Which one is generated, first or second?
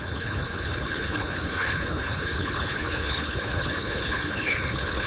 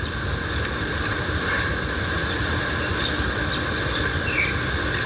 first